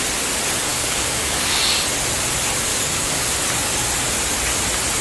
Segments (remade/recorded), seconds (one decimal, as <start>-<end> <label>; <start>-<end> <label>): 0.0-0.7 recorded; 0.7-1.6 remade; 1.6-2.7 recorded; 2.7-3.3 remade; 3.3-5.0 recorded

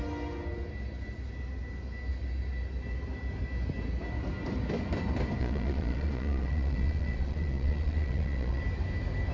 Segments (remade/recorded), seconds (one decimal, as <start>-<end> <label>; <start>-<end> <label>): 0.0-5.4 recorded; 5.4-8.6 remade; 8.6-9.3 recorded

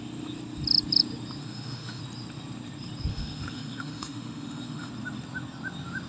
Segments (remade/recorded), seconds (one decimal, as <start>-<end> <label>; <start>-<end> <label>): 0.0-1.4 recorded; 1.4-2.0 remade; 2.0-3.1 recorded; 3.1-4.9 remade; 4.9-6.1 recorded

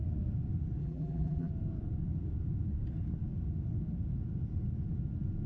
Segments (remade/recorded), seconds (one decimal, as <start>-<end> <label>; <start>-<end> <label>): 0.0-0.8 recorded; 0.8-1.5 remade; 1.5-5.5 recorded